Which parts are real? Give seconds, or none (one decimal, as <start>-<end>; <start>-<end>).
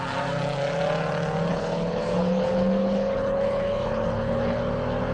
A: 0.0-1.5; 4.6-5.1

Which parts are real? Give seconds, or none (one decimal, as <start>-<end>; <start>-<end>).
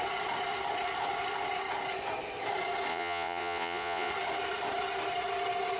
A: 0.0-2.9; 4.1-5.8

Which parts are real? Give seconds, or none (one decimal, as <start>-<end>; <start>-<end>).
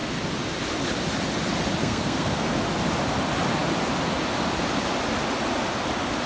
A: 0.0-1.8; 2.5-6.3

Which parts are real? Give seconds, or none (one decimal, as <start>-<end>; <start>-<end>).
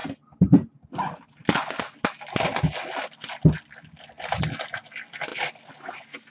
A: 0.0-6.3